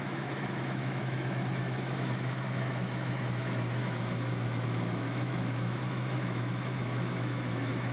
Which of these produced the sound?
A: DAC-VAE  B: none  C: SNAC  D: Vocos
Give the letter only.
A